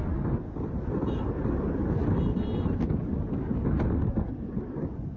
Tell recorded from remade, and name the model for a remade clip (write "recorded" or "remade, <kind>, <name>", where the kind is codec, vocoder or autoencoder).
recorded